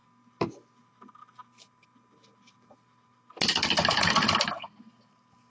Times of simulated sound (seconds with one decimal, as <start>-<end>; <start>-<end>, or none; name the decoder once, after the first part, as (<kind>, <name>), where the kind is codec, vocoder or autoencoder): none